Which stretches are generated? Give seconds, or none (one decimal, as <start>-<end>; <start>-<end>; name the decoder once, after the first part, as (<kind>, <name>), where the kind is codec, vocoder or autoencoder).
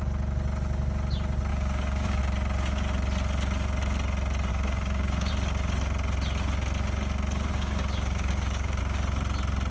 1.5-2.2 (codec, DAC); 4.5-5.3; 7.5-8.8